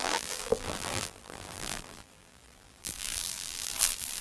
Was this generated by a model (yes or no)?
yes